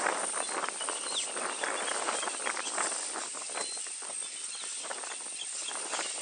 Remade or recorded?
recorded